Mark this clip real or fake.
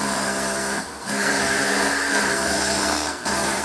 fake